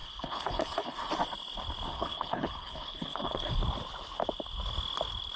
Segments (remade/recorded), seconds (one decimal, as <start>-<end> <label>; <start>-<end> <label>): 0.0-1.1 remade; 1.1-1.9 recorded; 1.9-3.5 remade; 3.5-5.4 recorded